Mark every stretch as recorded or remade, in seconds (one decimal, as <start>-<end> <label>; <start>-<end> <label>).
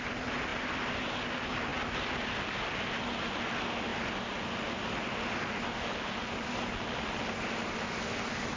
0.0-8.6 recorded